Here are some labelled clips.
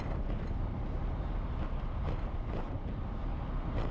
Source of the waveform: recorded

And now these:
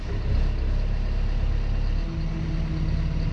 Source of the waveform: recorded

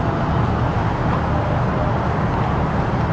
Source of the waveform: recorded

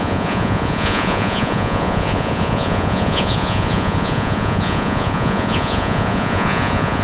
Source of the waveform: remade